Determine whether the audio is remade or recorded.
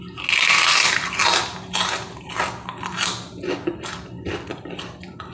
recorded